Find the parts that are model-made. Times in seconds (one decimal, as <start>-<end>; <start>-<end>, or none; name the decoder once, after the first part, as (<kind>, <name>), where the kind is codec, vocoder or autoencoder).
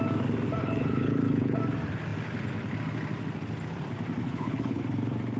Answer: 0.6-1.6 (codec, HILCodec); 4.2-4.8